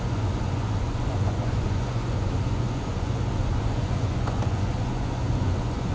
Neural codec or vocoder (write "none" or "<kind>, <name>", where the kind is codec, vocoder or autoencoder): vocoder, Vocos